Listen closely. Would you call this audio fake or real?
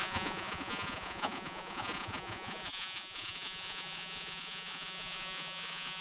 fake